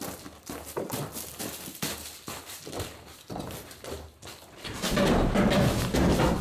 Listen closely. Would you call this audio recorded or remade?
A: recorded